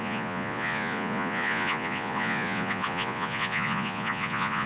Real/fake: fake